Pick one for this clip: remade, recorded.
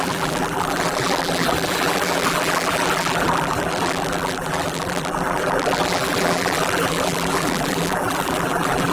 remade